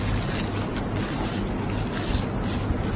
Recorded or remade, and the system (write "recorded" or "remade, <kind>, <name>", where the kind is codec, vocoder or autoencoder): recorded